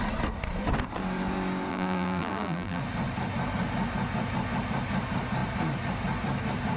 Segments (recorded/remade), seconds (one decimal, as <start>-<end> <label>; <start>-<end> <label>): 0.0-1.7 recorded; 1.7-2.8 remade; 2.8-6.8 recorded

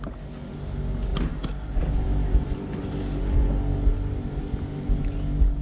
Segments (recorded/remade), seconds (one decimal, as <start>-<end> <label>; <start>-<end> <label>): 0.0-1.1 recorded; 1.1-3.2 remade; 3.2-5.6 recorded

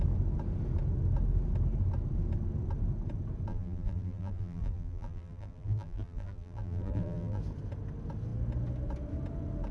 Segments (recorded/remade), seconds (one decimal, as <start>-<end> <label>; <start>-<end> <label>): 0.0-3.5 recorded; 3.5-7.4 remade; 7.4-9.7 recorded

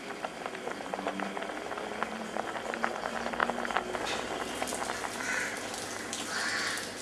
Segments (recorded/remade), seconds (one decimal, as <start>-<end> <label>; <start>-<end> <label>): 0.0-1.1 remade; 1.1-1.9 recorded; 1.9-3.4 remade; 3.4-6.0 recorded; 6.0-7.0 remade

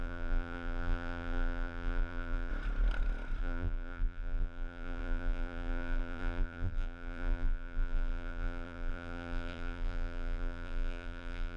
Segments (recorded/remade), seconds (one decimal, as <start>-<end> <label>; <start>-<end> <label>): 0.0-2.5 remade; 2.5-3.4 recorded; 3.4-11.6 remade

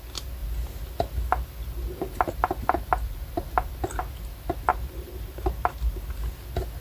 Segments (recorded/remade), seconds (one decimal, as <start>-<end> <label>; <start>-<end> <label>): 0.0-4.7 recorded; 4.7-6.1 remade; 6.1-6.8 recorded

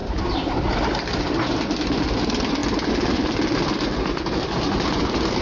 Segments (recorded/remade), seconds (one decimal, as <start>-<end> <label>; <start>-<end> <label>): 0.0-0.6 remade; 0.6-5.4 recorded